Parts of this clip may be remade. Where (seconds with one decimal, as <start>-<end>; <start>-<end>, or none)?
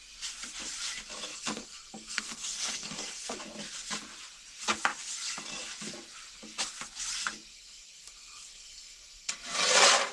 1.3-3.4; 7.5-9.3